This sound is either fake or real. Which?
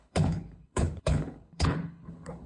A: fake